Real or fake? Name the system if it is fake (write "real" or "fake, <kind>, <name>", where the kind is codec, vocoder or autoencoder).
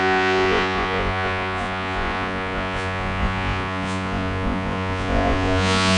fake, vocoder, Vocos